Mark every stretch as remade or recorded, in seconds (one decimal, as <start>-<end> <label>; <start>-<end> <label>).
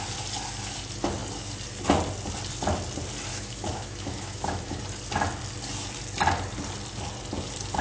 0.0-3.3 recorded; 3.3-4.8 remade; 4.8-7.8 recorded